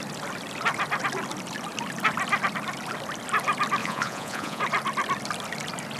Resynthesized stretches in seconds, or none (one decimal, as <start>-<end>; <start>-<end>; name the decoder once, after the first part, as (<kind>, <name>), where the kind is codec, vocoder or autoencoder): 3.8-4.6 (vocoder, Vocos)